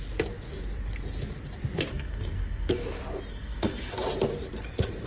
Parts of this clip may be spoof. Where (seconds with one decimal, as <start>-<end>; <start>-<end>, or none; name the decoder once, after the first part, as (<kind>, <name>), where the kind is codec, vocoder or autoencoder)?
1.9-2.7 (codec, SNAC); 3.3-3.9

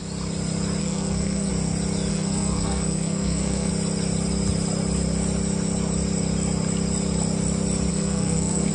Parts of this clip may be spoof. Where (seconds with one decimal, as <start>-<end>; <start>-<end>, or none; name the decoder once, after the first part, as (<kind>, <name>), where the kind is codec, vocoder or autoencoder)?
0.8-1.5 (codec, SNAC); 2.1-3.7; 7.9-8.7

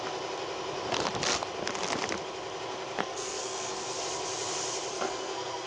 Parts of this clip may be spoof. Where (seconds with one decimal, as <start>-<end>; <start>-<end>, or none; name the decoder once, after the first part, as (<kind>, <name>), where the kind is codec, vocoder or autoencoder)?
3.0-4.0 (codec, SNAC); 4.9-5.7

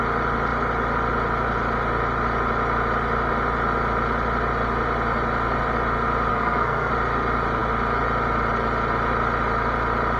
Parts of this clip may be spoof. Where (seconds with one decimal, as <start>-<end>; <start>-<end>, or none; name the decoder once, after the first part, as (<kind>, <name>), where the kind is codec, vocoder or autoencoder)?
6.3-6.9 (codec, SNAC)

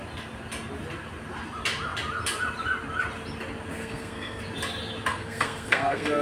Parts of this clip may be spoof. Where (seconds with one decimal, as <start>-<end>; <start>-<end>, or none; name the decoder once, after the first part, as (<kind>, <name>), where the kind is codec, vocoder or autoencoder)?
3.7-4.4 (codec, SNAC); 5.1-6.2